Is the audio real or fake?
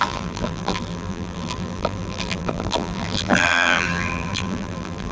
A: fake